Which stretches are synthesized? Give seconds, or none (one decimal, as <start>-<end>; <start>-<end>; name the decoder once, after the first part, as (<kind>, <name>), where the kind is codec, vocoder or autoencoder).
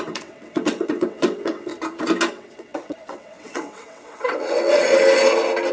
0.0-1.7 (vocoder, WaveNeXt); 2.3-4.9